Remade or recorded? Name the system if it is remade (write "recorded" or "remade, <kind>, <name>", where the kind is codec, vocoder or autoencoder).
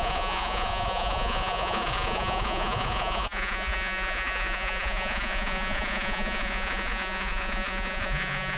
remade, vocoder, Vocos